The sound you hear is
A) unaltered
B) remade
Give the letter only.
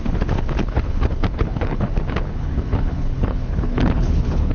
B